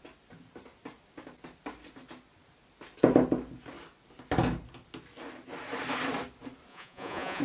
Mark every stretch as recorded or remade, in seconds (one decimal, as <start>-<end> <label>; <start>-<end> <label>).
0.0-6.7 recorded; 6.7-7.4 remade